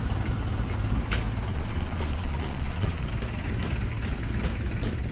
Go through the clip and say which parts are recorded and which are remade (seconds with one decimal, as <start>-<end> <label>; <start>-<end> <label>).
0.0-1.5 recorded; 1.5-3.1 remade; 3.1-5.1 recorded